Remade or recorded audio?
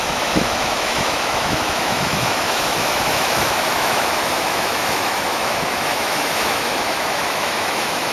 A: remade